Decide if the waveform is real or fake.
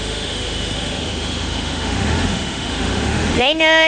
fake